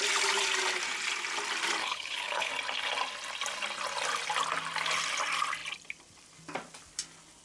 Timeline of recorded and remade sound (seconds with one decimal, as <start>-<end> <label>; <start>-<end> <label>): 0.0-1.8 recorded; 1.8-2.5 remade; 2.5-7.4 recorded